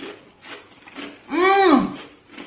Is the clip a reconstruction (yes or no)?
no